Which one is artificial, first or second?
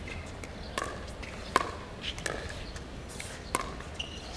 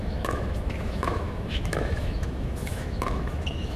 second